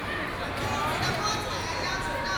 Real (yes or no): yes